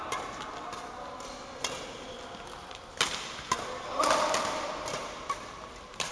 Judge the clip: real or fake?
real